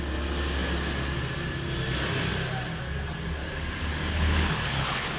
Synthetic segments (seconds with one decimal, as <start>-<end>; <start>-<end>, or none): 4.1-5.2